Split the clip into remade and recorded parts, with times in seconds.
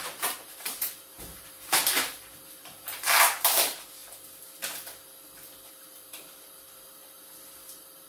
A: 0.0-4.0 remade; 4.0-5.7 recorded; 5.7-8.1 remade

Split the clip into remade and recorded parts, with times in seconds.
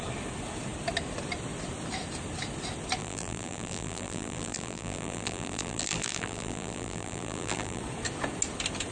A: 0.0-3.0 recorded; 3.0-7.8 remade; 7.8-8.9 recorded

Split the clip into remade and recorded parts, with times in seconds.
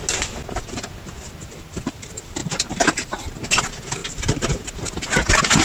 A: 0.0-2.4 recorded; 2.4-3.2 remade; 3.2-4.0 recorded; 4.0-4.7 remade; 4.7-5.6 recorded